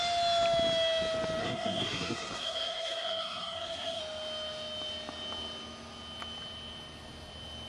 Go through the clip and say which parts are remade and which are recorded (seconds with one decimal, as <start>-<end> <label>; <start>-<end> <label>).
0.0-1.4 recorded; 1.4-4.0 remade; 4.0-7.7 recorded